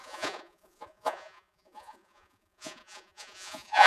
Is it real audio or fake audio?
fake